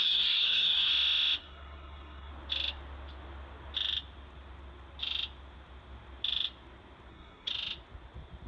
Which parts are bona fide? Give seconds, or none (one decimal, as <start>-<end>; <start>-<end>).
0.9-1.4; 2.3-7.1; 7.5-8.5